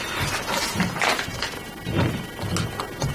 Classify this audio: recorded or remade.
recorded